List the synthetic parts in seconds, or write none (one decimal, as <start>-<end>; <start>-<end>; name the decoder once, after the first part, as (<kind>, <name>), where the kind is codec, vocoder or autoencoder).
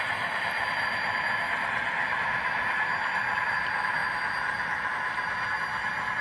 none